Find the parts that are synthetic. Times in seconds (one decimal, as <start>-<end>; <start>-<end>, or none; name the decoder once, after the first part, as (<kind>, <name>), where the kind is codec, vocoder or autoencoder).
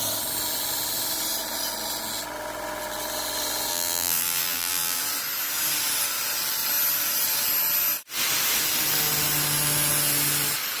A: 3.7-5.0 (vocoder, BigVGAN v2)